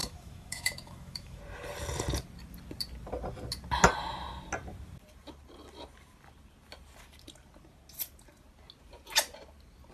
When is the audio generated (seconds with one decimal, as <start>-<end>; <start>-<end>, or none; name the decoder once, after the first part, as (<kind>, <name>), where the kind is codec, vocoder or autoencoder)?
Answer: 0.0-1.4 (autoencoder, DAC-VAE)